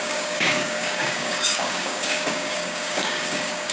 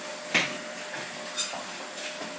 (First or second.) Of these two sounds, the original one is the second